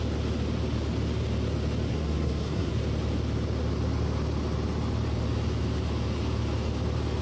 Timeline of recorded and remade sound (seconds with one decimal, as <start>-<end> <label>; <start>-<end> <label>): 0.0-1.9 recorded; 1.9-2.7 remade; 2.7-7.2 recorded